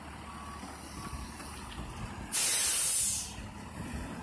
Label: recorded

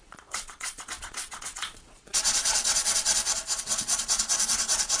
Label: remade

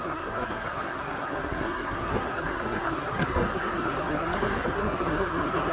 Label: remade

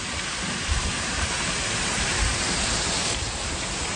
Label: remade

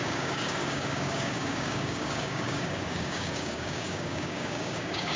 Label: remade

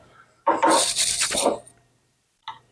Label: remade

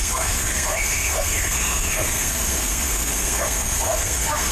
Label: remade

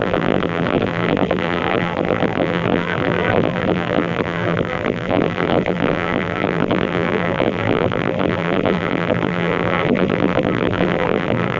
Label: remade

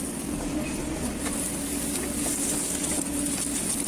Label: recorded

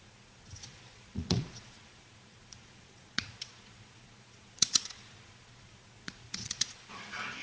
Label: remade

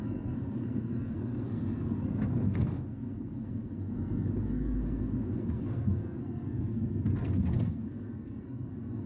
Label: remade